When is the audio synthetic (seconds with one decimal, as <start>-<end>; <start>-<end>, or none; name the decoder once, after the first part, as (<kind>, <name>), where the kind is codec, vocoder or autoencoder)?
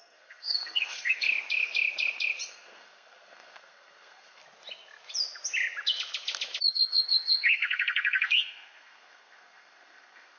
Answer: 0.0-1.3 (codec, SNAC); 2.5-4.4; 6.7-10.4